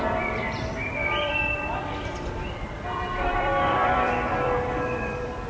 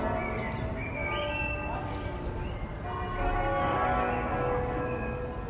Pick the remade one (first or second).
first